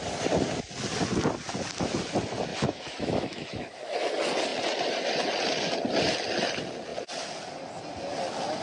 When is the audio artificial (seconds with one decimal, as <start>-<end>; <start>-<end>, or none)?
2.5-4.1